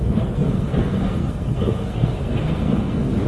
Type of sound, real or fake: fake